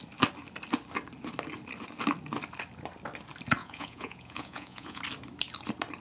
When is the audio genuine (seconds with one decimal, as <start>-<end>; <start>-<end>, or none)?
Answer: 0.0-3.6; 5.0-6.0